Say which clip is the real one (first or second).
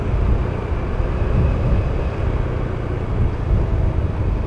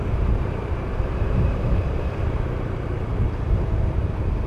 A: first